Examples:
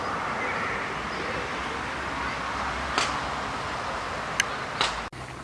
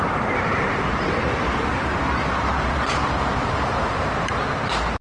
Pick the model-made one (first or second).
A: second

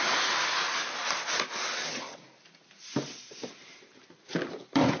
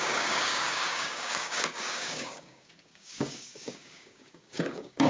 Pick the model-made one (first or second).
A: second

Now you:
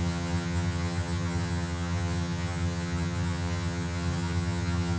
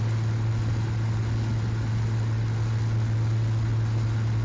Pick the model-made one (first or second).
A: first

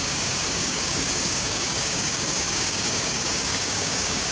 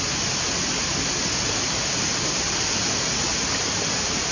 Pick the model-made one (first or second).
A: first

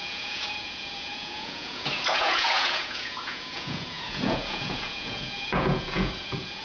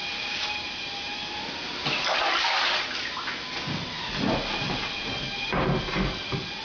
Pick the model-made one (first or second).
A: first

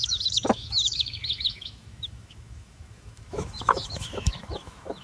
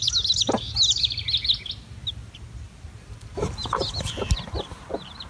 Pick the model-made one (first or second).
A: first